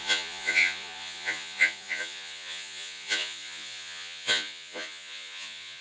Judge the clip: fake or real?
fake